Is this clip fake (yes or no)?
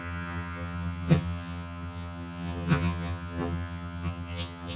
yes